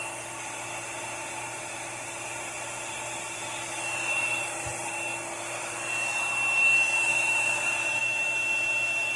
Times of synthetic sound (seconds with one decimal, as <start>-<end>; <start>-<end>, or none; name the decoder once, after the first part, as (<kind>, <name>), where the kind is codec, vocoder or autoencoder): 0.0-4.9 (vocoder, BigVGAN v2); 7.0-8.0